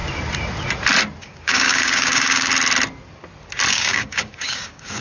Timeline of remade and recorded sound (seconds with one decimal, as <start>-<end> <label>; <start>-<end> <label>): 0.0-1.2 recorded; 1.2-2.5 remade; 2.5-3.7 recorded; 3.7-5.0 remade